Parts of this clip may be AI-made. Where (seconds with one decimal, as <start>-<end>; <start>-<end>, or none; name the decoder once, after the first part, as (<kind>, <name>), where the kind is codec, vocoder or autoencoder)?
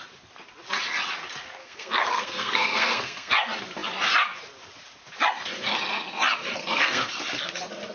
1.6-3.3 (codec, SNAC); 6.6-7.1